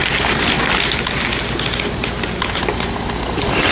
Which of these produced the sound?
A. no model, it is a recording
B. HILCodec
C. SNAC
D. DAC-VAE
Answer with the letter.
A